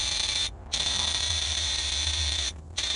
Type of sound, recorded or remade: remade